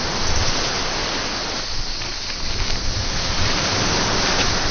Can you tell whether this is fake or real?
real